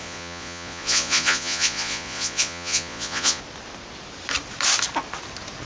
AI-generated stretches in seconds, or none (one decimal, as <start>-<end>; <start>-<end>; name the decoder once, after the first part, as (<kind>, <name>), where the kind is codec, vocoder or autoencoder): 0.0-3.4 (vocoder, Vocos)